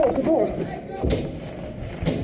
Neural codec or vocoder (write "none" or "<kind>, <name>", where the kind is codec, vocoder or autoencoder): none